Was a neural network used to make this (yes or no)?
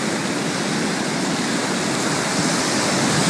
no